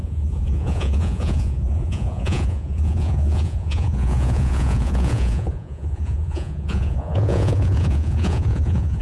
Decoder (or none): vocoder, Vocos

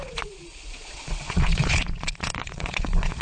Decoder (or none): vocoder, Vocos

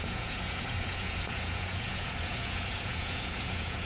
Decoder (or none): vocoder, Vocos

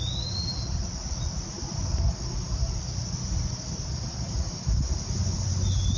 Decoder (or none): none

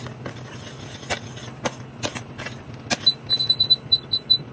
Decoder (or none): none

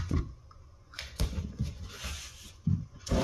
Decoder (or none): vocoder, Vocos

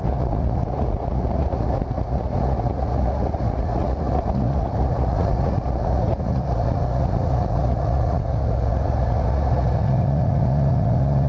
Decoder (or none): vocoder, Vocos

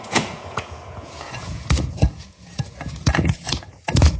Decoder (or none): vocoder, Vocos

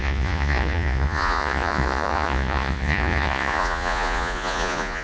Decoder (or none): vocoder, Vocos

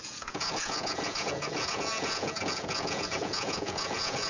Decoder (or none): vocoder, Vocos